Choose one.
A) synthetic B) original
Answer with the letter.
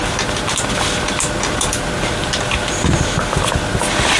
B